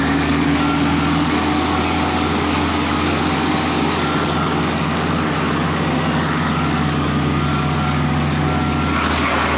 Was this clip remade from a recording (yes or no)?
yes